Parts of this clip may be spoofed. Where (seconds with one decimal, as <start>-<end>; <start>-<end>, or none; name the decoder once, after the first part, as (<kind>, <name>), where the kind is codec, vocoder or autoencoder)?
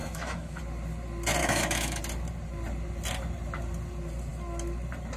0.0-0.6 (autoencoder, DAC-VAE); 1.4-2.0